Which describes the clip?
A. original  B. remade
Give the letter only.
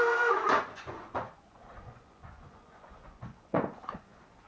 B